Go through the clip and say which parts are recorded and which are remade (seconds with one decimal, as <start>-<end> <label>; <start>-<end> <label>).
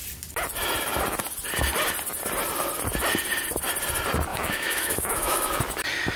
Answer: 0.0-4.3 recorded; 4.3-5.6 remade; 5.6-6.2 recorded